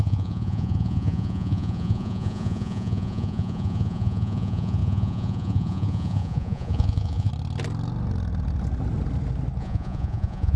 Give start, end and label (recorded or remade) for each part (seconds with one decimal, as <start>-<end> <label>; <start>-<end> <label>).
0.0-7.3 remade; 7.3-9.6 recorded; 9.6-10.6 remade